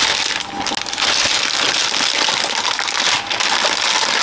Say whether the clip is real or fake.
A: real